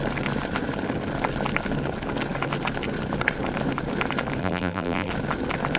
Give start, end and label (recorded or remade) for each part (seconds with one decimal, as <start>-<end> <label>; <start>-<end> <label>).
0.0-4.4 recorded; 4.4-5.1 remade; 5.1-5.8 recorded